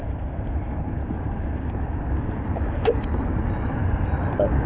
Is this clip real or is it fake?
real